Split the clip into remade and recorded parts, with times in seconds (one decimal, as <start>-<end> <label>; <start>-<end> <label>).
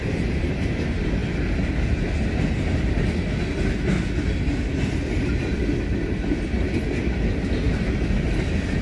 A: 0.0-8.8 recorded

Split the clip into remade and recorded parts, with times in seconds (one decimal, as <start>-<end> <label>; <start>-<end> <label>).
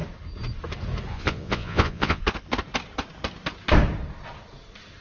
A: 0.0-1.1 recorded; 1.1-2.2 remade; 2.2-5.0 recorded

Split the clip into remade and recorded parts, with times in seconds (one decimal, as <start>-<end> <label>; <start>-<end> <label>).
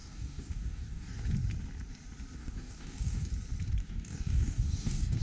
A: 0.0-1.2 remade; 1.2-2.4 recorded; 2.4-3.3 remade; 3.3-3.8 recorded; 3.8-5.2 remade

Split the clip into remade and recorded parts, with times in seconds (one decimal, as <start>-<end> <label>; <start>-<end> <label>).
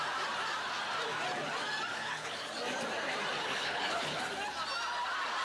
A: 0.0-1.9 recorded; 1.9-2.5 remade; 2.5-3.5 recorded; 3.5-4.2 remade; 4.2-5.4 recorded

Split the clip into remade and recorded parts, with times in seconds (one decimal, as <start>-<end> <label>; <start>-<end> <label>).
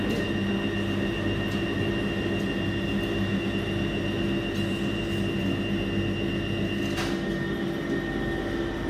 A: 0.0-8.9 recorded